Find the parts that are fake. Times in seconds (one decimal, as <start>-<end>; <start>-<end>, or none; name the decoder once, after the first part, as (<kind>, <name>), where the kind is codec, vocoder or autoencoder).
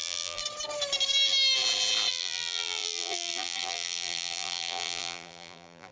0.0-0.4 (vocoder, BigVGAN v2); 2.1-5.9